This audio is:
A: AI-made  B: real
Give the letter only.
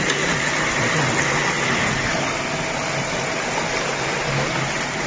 B